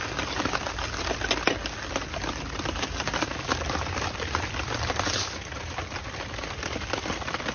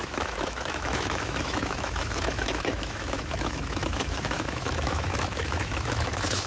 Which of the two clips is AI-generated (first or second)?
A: second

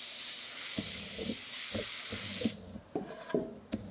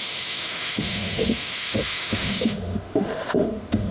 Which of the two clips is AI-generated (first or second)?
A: second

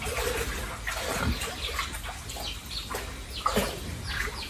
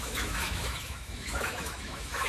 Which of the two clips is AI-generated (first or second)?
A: second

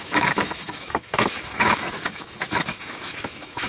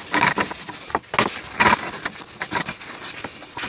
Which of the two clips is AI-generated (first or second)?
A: first